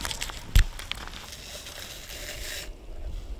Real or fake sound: real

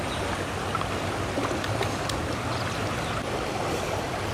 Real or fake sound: real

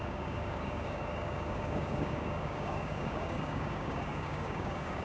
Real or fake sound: fake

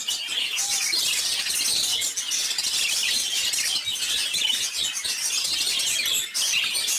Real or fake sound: real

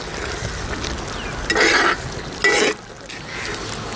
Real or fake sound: real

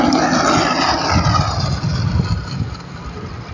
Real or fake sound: real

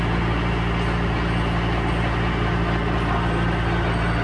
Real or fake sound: real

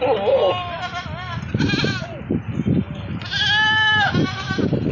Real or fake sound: real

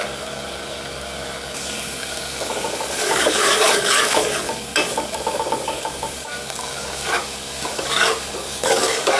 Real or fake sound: fake